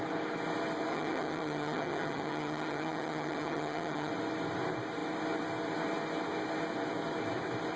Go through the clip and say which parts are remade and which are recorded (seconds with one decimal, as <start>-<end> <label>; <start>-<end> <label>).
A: 0.0-0.9 recorded; 0.9-4.1 remade; 4.1-7.8 recorded